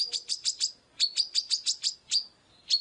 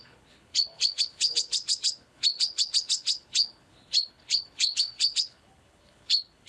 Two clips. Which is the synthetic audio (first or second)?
second